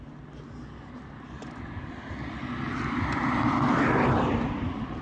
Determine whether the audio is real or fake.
real